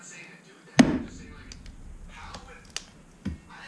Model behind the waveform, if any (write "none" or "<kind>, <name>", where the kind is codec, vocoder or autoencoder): none